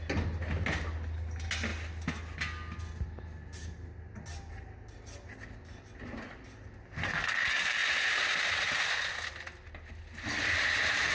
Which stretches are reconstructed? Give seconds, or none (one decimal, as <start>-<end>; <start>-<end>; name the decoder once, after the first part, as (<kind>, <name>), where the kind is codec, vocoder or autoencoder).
none